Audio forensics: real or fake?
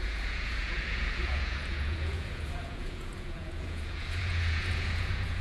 fake